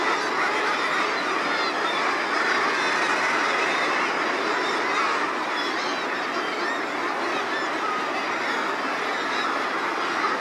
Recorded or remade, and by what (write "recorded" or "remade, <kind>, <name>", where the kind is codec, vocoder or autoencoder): recorded